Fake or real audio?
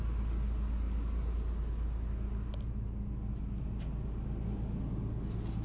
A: real